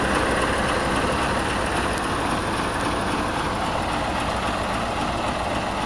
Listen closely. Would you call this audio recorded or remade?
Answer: recorded